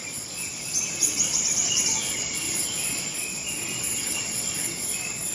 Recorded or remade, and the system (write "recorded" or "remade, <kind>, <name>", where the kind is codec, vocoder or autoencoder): remade, vocoder, Vocos